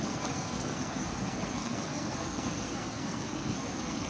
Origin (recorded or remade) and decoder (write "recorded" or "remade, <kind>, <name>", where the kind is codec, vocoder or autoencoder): remade, codec, SNAC